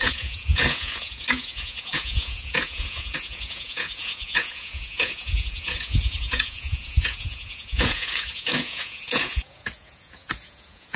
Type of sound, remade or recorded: remade